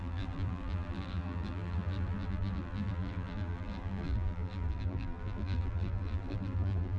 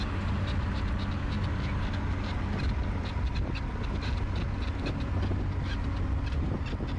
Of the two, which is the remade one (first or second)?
first